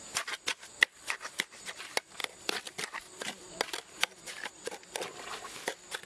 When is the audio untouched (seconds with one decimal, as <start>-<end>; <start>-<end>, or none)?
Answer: 0.0-0.5; 1.6-2.2; 3.5-6.1